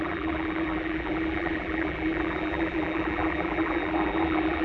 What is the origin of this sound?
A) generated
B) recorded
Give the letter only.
A